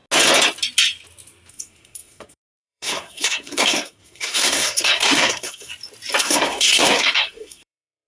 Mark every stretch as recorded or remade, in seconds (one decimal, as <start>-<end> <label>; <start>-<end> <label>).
0.0-1.5 recorded; 1.5-5.7 remade; 5.7-6.2 recorded; 6.2-8.1 remade